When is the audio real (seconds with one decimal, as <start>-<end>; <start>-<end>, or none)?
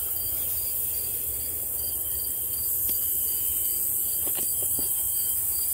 1.1-4.1